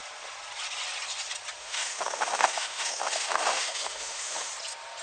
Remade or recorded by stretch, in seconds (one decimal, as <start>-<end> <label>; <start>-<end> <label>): 0.0-1.6 recorded; 1.6-4.5 remade; 4.5-5.0 recorded